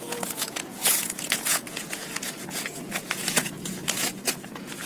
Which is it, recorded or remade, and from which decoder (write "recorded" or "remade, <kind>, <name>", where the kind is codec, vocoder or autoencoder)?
remade, vocoder, Vocos